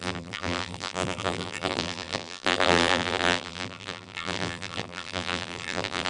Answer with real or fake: fake